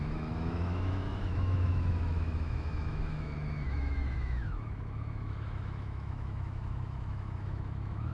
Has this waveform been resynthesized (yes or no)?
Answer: yes